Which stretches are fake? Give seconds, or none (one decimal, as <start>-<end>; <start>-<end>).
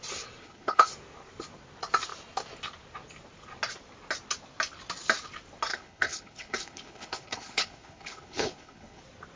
0.4-0.9; 5.7-9.0